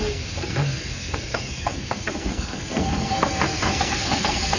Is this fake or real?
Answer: fake